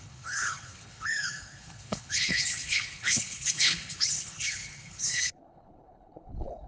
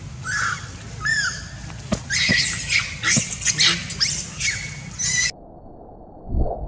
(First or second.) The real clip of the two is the second